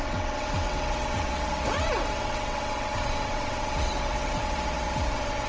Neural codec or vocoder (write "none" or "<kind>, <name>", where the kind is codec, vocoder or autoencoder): vocoder, WaveNeXt